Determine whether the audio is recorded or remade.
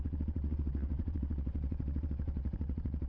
remade